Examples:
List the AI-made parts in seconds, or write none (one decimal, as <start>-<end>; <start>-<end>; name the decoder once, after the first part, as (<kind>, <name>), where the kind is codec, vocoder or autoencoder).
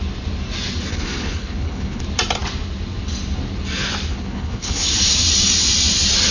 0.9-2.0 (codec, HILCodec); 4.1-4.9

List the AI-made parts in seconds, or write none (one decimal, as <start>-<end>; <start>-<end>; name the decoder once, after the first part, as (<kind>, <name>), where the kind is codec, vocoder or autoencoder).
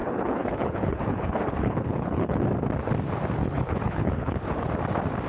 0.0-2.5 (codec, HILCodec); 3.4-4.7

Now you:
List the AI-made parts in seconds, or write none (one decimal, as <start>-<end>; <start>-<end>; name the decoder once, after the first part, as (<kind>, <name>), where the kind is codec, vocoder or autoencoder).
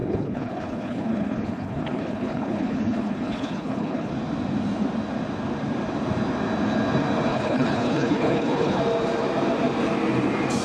0.0-4.1 (codec, HILCodec); 7.3-8.8